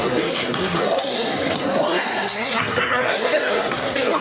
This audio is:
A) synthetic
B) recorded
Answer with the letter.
A